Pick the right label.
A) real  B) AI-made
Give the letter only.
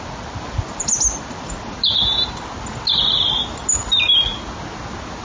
A